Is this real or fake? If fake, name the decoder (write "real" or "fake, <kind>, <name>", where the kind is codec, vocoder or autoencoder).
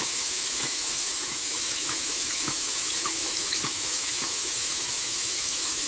fake, autoencoder, DAC-VAE